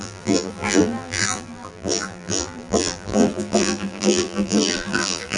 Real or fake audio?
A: fake